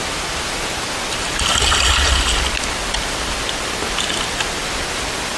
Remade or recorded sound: recorded